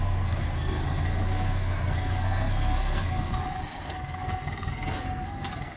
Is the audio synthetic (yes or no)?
yes